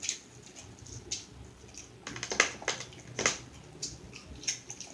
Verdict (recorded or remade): recorded